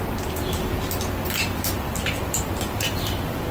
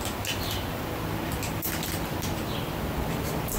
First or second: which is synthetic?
first